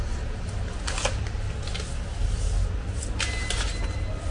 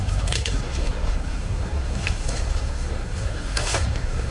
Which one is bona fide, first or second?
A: first